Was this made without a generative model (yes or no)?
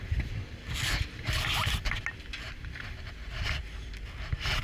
yes